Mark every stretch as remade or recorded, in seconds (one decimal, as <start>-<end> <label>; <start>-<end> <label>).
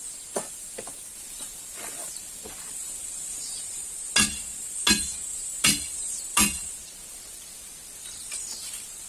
0.0-3.0 recorded; 3.0-3.8 remade; 3.8-9.1 recorded